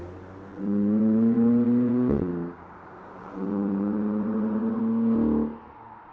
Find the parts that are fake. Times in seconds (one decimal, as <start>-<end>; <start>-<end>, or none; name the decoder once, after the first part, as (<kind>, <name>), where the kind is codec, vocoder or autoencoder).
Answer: 0.5-2.3 (vocoder, WaveNeXt); 3.2-4.8